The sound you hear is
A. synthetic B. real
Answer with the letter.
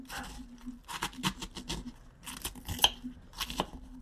B